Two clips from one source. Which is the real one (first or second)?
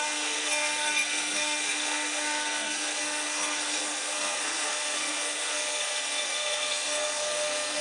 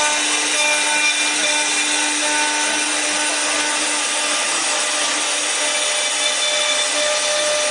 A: second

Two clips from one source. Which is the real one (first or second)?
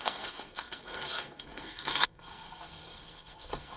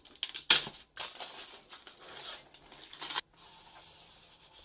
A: second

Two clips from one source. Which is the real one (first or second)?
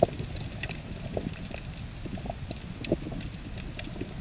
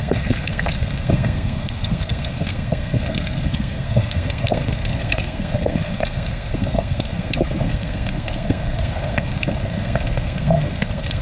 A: first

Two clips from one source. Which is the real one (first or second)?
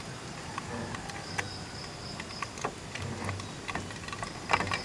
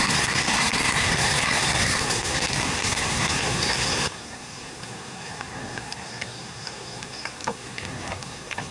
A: first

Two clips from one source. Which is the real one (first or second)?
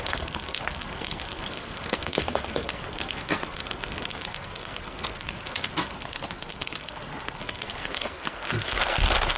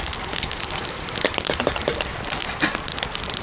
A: second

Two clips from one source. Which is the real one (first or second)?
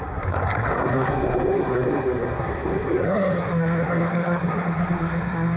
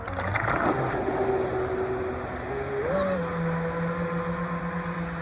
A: second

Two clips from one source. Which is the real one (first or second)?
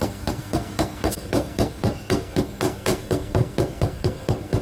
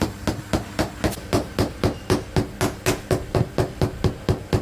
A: second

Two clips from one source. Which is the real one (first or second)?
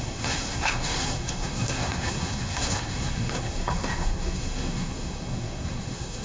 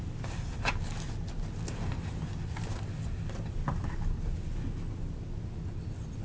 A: second